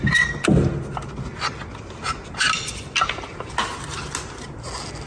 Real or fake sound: real